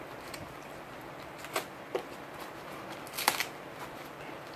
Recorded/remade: recorded